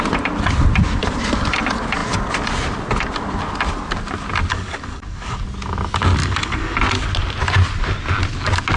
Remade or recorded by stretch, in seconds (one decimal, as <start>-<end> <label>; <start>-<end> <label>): 0.0-4.5 recorded; 4.5-5.4 remade; 5.4-6.2 recorded; 6.2-6.8 remade; 6.8-8.8 recorded